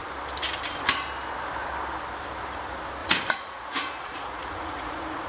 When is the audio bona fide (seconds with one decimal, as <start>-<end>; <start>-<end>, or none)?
0.0-3.0